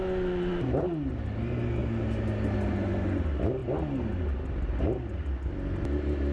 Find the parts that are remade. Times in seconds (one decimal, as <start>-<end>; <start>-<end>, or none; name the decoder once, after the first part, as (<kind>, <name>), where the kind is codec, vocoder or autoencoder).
none

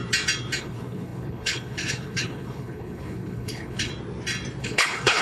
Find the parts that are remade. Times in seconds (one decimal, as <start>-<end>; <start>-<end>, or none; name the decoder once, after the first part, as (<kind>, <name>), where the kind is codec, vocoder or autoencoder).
0.6-3.9 (codec, HILCodec); 4.6-5.2

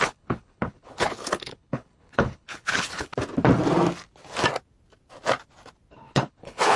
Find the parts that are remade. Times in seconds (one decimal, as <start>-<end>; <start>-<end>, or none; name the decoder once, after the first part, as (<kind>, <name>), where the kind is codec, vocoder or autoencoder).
0.0-3.1 (codec, HILCodec); 5.9-6.8